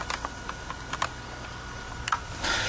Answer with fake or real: real